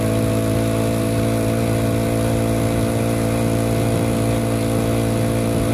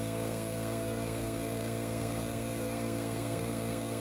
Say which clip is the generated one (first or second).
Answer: second